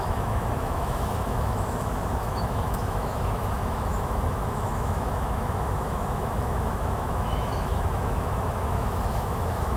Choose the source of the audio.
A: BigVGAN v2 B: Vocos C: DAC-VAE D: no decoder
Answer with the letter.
C